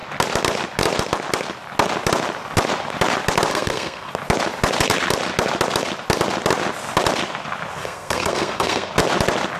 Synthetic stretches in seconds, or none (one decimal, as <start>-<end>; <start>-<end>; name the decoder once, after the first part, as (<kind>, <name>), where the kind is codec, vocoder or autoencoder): 3.5-4.1 (codec, SNAC); 7.8-8.9